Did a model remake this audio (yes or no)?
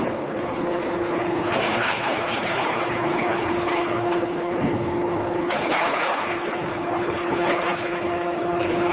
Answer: yes